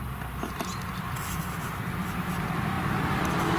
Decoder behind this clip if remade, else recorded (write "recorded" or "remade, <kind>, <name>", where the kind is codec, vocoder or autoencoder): recorded